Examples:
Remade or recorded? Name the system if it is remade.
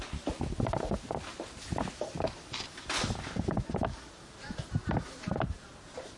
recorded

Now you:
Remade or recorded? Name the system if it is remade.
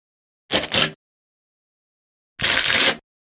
recorded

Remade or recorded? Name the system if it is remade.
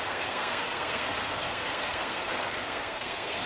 remade, codec, SNAC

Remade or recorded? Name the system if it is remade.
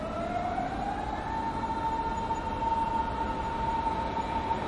recorded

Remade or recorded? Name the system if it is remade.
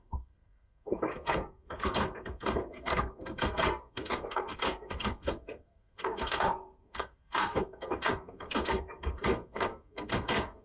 remade, codec, SNAC